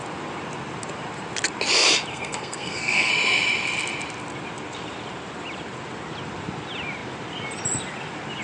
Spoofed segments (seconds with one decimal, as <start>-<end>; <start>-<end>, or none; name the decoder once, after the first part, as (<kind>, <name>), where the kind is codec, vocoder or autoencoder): 2.1-3.1 (codec, SNAC)

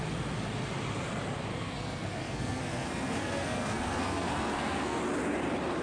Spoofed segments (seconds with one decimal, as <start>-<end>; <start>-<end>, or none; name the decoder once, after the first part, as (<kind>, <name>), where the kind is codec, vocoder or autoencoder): 1.5-5.0 (codec, SNAC)

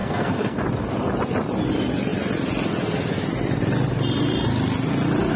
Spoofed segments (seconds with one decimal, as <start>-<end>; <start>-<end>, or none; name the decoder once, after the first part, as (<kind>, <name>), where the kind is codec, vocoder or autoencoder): 0.0-0.6 (codec, SNAC)

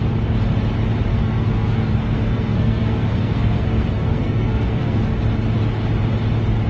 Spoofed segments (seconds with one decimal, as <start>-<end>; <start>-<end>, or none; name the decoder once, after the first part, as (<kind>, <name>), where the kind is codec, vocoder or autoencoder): 1.1-5.1 (codec, SNAC)

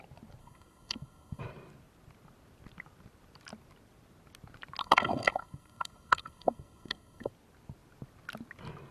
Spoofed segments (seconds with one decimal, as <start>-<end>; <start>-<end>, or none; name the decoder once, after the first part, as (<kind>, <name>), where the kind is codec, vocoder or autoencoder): 0.4-1.4 (codec, SNAC); 4.8-7.3

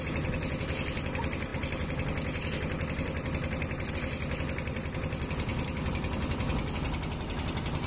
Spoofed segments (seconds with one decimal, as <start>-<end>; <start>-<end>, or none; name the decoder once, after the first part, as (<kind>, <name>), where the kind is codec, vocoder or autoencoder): none

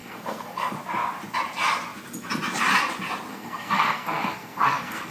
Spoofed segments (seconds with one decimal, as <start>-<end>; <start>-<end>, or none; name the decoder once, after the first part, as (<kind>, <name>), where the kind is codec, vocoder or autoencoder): 0.0-0.7 (codec, SNAC); 3.3-5.1